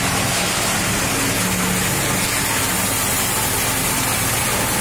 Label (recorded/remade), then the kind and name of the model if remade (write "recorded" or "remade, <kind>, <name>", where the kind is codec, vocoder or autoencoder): recorded